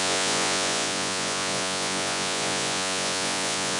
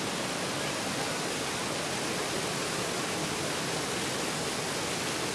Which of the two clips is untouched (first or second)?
second